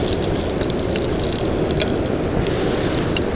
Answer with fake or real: real